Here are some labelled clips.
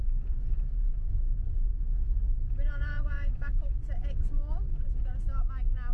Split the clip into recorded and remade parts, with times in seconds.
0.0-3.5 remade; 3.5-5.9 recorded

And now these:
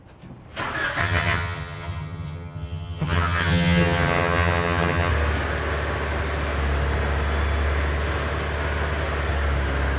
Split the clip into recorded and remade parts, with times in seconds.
0.0-1.0 recorded; 1.0-5.1 remade; 5.1-10.0 recorded

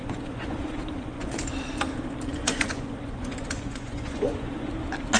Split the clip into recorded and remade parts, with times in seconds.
0.0-1.3 remade; 1.3-2.4 recorded; 2.4-4.7 remade; 4.7-5.2 recorded

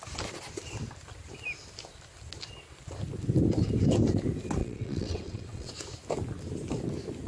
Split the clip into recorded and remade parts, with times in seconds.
0.0-4.6 recorded; 4.6-5.7 remade; 5.7-7.3 recorded

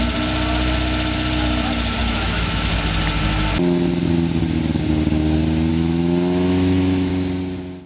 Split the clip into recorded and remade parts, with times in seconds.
0.0-2.0 recorded; 2.0-2.7 remade; 2.7-5.7 recorded; 5.7-7.1 remade; 7.1-7.9 recorded

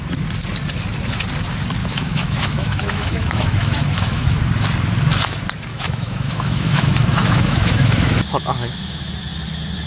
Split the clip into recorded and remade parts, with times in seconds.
0.0-1.8 recorded; 1.8-4.4 remade; 4.4-5.7 recorded; 5.7-9.1 remade; 9.1-9.9 recorded